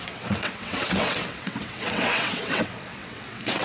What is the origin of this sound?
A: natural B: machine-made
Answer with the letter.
B